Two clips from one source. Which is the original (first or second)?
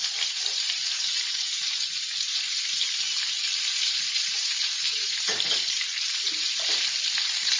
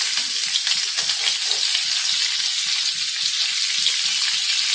second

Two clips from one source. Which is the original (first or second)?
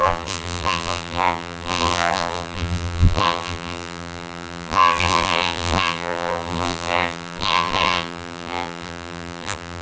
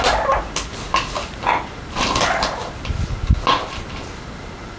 second